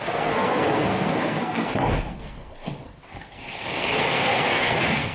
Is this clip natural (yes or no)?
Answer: no